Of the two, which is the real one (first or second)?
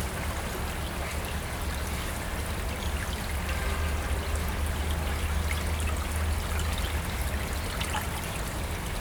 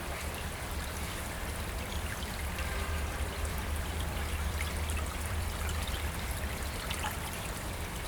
first